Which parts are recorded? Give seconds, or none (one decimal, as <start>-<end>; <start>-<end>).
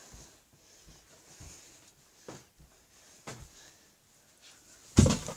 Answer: 0.0-5.4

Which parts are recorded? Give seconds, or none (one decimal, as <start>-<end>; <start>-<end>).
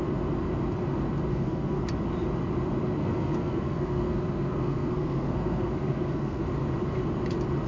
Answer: 0.0-1.3; 1.8-3.0; 6.4-7.7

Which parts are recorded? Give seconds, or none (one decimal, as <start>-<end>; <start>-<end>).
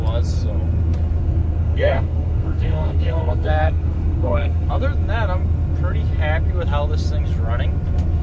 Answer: 0.0-1.2; 4.7-8.2